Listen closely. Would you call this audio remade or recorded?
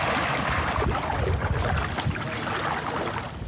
recorded